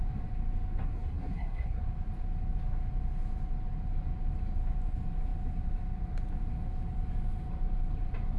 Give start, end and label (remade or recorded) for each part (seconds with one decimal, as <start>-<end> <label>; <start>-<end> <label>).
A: 0.0-0.8 recorded; 0.8-1.8 remade; 1.8-8.4 recorded